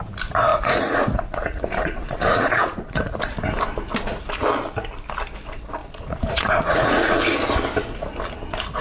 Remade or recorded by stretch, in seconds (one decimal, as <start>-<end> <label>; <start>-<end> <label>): 0.0-0.5 recorded; 0.5-3.2 remade; 3.2-5.8 recorded; 5.8-7.2 remade; 7.2-8.8 recorded